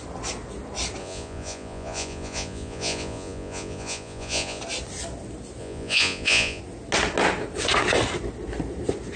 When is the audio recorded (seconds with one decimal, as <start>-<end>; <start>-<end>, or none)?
0.0-1.0; 4.6-5.6; 6.6-9.2